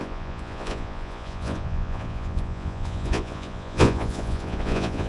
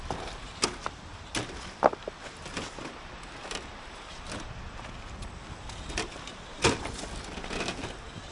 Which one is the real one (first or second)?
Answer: second